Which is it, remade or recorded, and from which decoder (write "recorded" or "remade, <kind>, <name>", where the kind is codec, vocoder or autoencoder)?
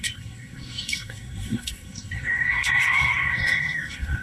remade, codec, SNAC